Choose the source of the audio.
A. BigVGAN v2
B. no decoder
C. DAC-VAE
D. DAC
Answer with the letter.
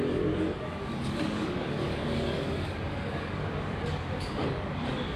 D